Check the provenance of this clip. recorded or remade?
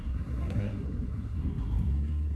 remade